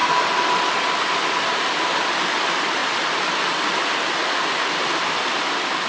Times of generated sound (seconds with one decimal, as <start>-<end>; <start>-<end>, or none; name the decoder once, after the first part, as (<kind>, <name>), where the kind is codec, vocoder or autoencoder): 0.0-1.7 (vocoder, BigVGAN v2)